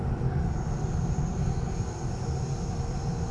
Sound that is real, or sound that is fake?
real